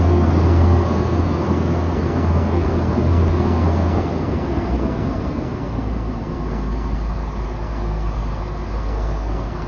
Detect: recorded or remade remade